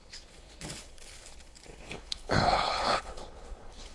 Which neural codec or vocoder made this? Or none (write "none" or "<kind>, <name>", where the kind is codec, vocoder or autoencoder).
codec, HILCodec